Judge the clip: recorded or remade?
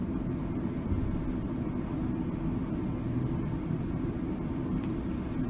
recorded